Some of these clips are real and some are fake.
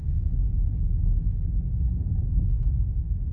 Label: real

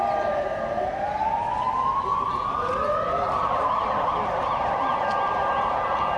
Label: real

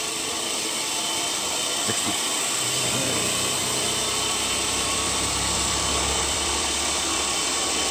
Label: fake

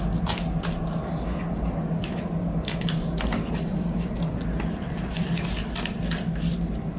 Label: real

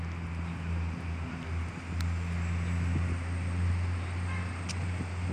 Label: real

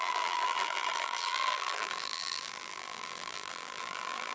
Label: fake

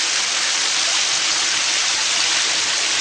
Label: real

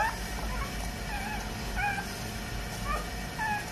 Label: real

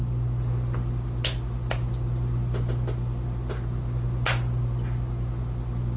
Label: real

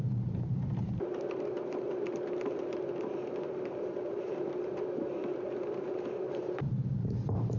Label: fake